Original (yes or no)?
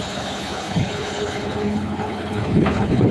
no